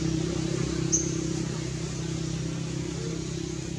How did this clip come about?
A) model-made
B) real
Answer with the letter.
B